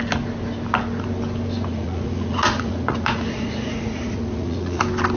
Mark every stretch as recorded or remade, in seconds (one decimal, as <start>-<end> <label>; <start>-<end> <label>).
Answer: 0.0-1.7 recorded; 1.7-4.8 remade; 4.8-5.2 recorded